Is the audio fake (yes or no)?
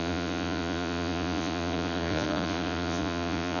yes